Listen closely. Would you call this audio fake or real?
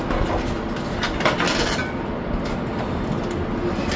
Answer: real